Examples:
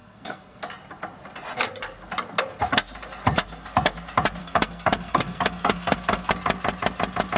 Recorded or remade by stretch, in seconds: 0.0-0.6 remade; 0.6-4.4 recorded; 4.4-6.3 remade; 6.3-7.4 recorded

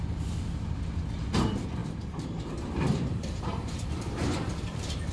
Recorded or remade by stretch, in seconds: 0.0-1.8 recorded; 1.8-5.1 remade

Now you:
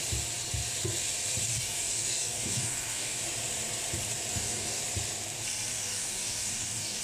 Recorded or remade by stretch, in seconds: 0.0-1.5 recorded; 1.5-3.2 remade; 3.2-4.3 recorded; 4.3-4.8 remade; 4.8-5.7 recorded; 5.7-7.0 remade

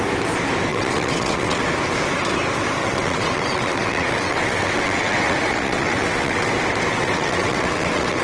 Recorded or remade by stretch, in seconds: 0.0-0.7 recorded; 0.7-1.6 remade; 1.6-2.8 recorded; 2.8-6.5 remade; 6.5-6.9 recorded; 6.9-8.2 remade

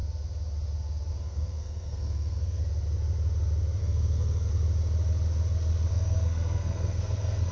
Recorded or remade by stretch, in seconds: 0.0-1.1 recorded; 1.1-2.6 remade; 2.6-3.8 recorded; 3.8-4.5 remade; 4.5-5.9 recorded; 5.9-7.5 remade

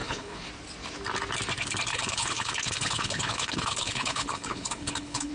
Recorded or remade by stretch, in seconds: 0.0-0.5 remade; 0.5-1.9 recorded; 1.9-5.3 remade

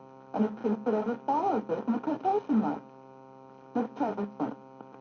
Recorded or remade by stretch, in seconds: 0.0-5.0 recorded